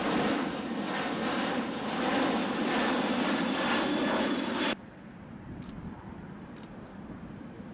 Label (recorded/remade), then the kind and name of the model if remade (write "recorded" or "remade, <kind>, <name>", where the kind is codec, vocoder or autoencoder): remade, vocoder, BigVGAN v2